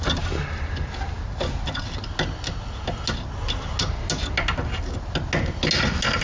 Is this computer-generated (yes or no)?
no